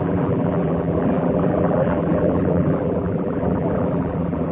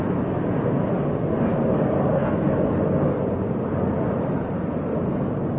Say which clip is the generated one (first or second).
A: first